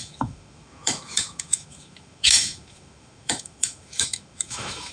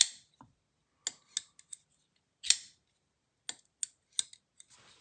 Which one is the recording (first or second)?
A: second